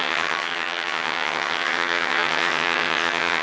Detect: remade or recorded remade